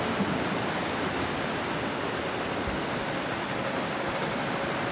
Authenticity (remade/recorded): recorded